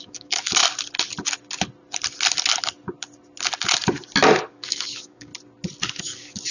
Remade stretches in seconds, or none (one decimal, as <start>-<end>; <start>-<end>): 0.0-0.6; 4.5-5.3; 6.0-6.5